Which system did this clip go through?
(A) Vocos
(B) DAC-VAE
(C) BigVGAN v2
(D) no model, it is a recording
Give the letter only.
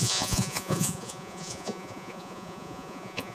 A